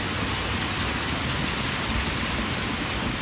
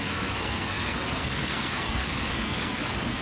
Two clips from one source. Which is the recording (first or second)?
first